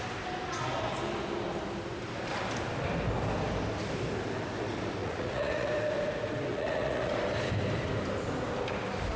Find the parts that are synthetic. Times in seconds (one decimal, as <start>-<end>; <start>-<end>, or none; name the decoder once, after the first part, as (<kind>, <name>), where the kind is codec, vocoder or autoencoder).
5.0-5.7 (vocoder, Vocos); 6.5-7.1